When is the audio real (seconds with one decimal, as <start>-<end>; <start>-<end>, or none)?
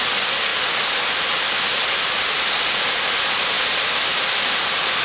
0.0-5.0